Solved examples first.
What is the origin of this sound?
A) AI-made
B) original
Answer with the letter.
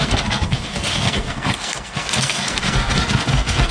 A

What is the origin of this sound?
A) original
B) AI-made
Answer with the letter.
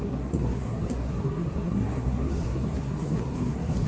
B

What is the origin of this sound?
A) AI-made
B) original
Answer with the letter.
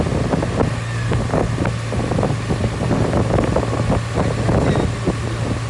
B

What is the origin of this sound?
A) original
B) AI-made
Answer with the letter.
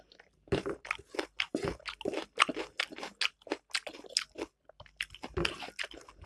A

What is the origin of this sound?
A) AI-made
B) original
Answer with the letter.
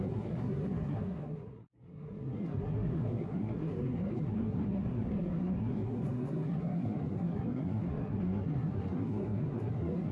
A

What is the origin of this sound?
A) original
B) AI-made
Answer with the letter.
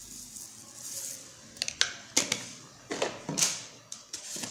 A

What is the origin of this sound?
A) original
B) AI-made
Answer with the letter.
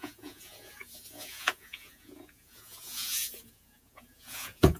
B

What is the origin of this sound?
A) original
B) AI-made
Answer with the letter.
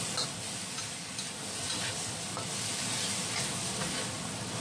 A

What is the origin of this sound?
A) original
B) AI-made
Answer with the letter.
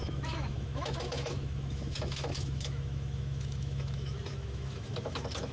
B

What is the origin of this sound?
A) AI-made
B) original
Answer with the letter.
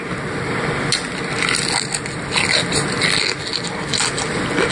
B